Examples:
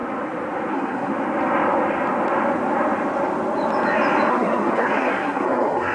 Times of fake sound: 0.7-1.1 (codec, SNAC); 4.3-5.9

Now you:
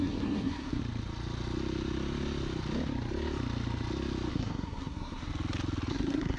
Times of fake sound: 0.0-0.8 (codec, SNAC); 4.3-5.3; 5.9-6.4